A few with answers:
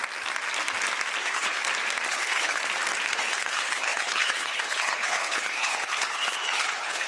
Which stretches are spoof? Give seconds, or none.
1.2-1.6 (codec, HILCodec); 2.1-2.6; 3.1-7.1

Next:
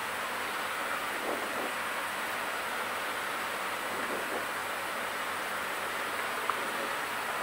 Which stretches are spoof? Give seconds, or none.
none

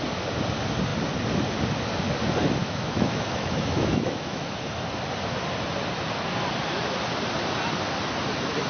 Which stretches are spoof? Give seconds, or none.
2.6-4.6 (autoencoder, DAC-VAE)

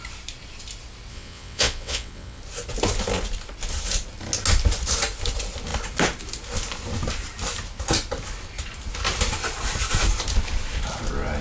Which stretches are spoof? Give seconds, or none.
1.1-2.4 (vocoder, WaveNeXt)

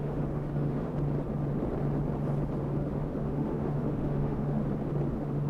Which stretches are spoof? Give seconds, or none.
0.0-0.9 (autoencoder, DAC-VAE); 2.6-4.6; 5.1-5.5

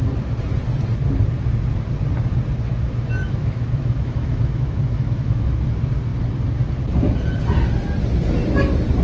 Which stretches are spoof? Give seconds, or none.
3.2-5.6 (autoencoder, DAC-VAE)

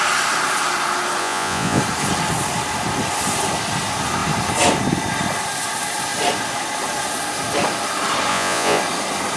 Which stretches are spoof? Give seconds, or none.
1.2-1.8 (vocoder, Vocos); 8.3-8.8